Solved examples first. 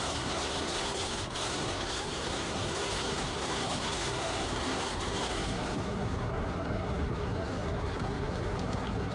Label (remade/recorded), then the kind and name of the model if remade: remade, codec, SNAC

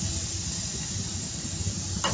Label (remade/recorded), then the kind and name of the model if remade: recorded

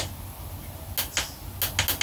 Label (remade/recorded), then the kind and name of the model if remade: recorded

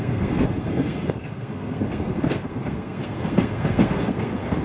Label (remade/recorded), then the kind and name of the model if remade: remade, codec, SNAC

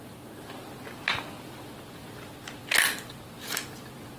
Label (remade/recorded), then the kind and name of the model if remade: recorded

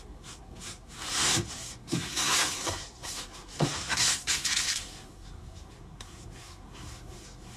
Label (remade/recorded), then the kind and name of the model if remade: remade, codec, SNAC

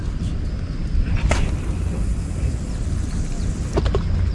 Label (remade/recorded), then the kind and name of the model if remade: recorded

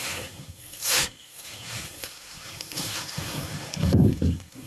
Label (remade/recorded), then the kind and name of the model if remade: remade, codec, SNAC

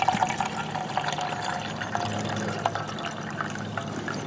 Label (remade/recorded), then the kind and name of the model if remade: recorded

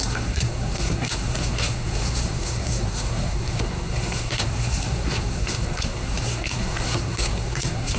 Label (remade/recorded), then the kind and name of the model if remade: remade, codec, SNAC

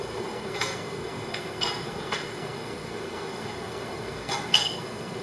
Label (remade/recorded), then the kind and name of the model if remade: remade, codec, SNAC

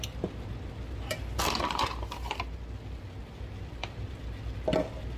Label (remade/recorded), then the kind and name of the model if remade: recorded